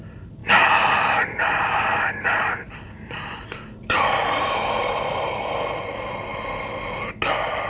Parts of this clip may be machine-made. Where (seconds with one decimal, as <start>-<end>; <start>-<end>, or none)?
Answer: 0.4-5.0